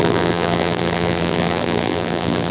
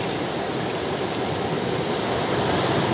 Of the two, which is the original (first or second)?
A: second